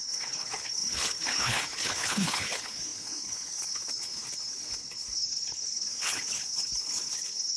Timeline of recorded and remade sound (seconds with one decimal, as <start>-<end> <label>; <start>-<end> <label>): 0.0-7.6 remade

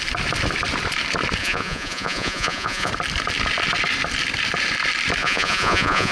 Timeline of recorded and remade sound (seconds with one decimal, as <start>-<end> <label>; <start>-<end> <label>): 0.0-1.4 recorded; 1.4-2.9 remade; 2.9-5.2 recorded; 5.2-6.1 remade

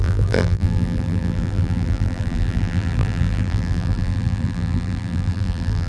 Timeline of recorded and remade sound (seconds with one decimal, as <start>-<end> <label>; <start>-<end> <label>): 0.0-5.9 remade